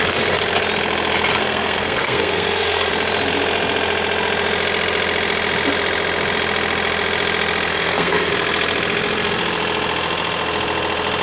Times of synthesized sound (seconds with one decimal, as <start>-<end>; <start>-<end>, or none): 1.4-2.9; 7.7-8.3